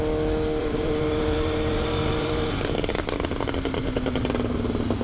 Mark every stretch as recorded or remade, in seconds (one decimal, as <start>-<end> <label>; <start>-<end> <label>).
0.0-0.6 recorded; 0.6-2.7 remade; 2.7-5.0 recorded